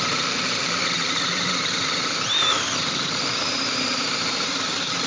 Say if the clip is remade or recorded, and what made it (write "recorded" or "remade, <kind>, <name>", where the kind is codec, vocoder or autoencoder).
remade, vocoder, BigVGAN v2